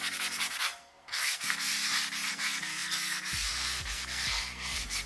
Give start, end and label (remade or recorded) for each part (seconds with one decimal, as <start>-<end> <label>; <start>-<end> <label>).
0.0-1.7 remade; 1.7-2.3 recorded; 2.3-5.1 remade